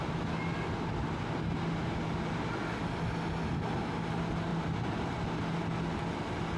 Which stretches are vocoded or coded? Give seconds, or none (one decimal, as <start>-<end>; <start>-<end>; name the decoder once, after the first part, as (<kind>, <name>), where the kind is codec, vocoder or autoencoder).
4.5-5.6 (vocoder, BigVGAN v2)

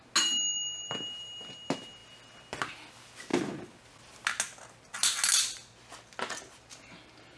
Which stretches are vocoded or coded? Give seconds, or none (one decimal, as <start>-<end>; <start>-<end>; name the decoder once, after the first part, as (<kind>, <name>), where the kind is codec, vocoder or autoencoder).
none

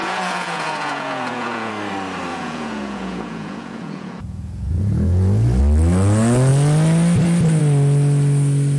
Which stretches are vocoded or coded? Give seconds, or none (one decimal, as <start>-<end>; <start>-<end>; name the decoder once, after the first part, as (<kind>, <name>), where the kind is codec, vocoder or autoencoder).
0.0-1.7 (vocoder, Vocos); 2.3-5.6